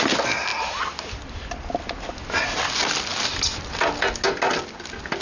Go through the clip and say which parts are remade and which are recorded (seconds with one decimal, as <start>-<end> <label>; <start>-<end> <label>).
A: 0.0-5.2 recorded